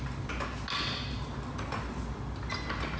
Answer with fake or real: real